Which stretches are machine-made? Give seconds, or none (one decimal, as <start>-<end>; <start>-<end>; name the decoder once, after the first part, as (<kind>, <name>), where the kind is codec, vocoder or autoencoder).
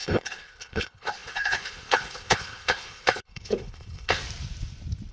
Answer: 0.0-4.2 (codec, HILCodec)